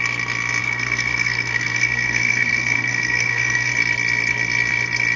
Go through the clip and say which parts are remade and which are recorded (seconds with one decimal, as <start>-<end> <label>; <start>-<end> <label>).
0.0-0.6 recorded; 0.6-3.7 remade; 3.7-5.2 recorded